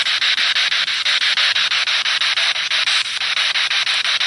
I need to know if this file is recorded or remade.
recorded